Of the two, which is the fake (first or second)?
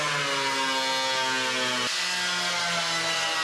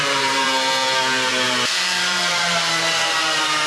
second